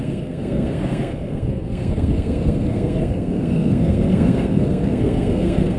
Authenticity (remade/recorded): remade